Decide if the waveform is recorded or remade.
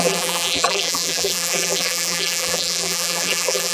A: remade